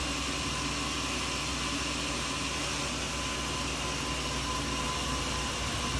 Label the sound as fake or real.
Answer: real